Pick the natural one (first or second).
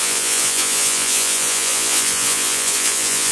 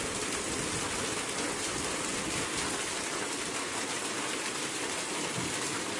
second